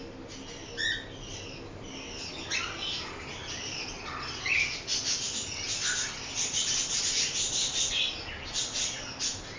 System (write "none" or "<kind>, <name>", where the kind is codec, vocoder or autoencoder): none